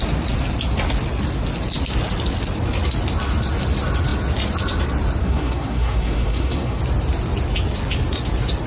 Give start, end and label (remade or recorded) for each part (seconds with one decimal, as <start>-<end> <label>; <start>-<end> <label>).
0.0-5.2 recorded; 5.2-6.8 remade; 6.8-8.7 recorded